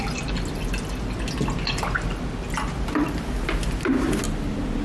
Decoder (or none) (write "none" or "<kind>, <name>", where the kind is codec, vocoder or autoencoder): none